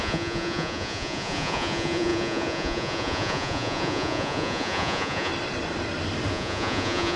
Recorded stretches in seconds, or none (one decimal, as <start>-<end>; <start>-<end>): 5.3-6.3